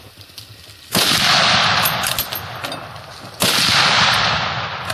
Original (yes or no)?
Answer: yes